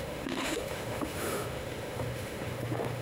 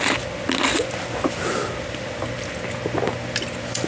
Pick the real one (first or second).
second